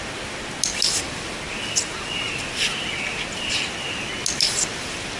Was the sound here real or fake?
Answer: real